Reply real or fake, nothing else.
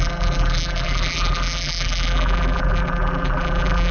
fake